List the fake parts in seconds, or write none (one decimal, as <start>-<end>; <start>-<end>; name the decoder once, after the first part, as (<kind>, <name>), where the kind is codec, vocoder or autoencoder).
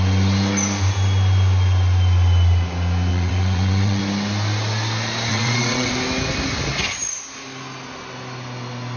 3.1-4.0 (vocoder, WaveNeXt); 5.3-5.9